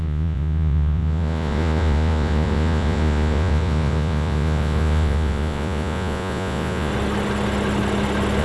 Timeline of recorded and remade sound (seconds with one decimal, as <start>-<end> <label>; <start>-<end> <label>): 0.0-6.9 remade; 6.9-8.4 recorded